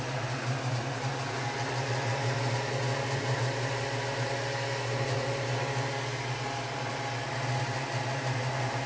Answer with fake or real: real